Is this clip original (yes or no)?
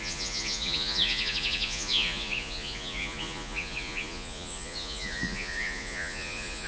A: no